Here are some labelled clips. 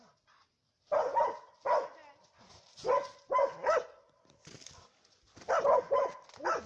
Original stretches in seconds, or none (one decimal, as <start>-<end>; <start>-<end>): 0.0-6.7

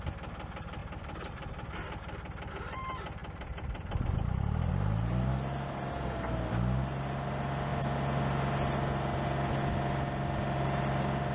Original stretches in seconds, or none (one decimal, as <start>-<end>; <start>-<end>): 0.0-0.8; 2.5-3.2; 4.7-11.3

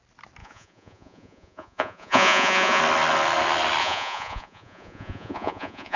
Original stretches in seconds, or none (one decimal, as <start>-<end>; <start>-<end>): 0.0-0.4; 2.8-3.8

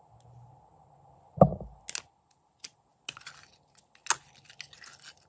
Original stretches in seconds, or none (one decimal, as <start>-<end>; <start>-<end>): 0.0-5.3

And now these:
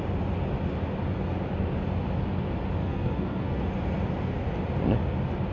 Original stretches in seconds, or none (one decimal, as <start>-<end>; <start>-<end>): 0.0-2.8; 3.6-5.5

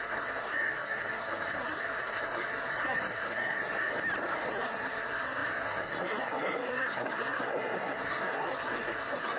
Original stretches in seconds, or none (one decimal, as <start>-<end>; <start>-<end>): 3.9-4.5

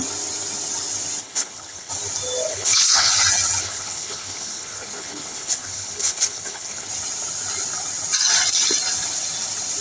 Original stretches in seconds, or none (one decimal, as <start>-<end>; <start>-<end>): 0.0-1.2; 1.9-2.5; 3.1-3.6; 6.9-9.8